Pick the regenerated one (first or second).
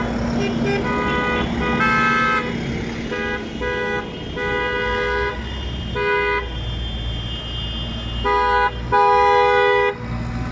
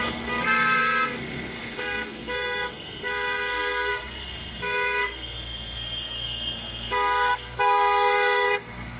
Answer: second